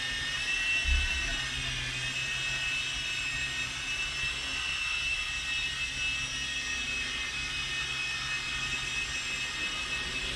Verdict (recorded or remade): recorded